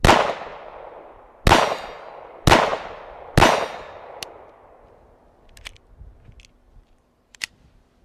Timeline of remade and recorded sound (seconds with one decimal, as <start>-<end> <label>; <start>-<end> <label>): 0.0-6.6 recorded; 6.6-7.5 remade; 7.5-8.0 recorded